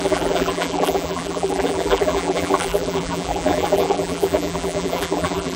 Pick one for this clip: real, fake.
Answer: fake